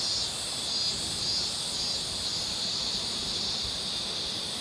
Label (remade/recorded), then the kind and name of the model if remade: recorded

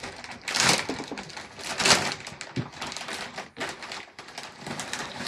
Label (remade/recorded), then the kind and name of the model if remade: recorded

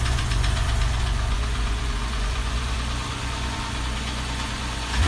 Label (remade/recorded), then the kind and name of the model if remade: remade, vocoder, Vocos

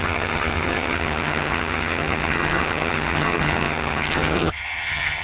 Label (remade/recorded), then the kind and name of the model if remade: remade, vocoder, HiFi-GAN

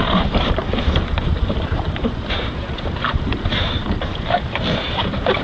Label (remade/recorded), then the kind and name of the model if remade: remade, vocoder, BigVGAN v2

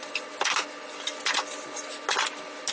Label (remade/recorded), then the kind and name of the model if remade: recorded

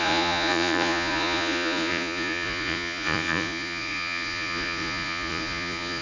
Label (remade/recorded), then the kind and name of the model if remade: remade, vocoder, Vocos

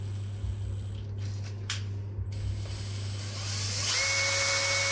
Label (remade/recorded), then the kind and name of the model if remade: recorded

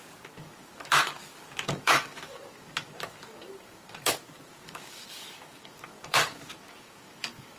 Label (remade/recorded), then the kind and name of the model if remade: remade, codec, DAC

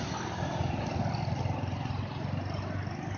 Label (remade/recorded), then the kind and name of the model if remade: recorded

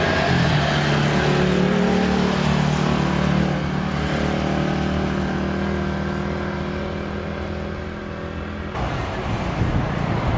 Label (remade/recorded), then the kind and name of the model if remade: recorded